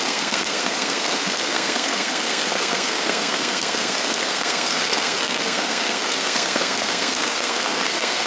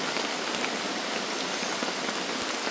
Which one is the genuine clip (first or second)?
second